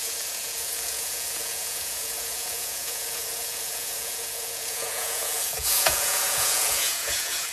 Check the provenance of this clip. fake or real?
fake